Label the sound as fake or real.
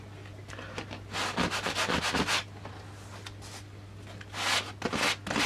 real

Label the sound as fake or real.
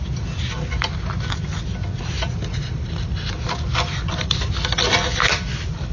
real